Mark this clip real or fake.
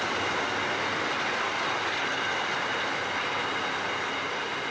real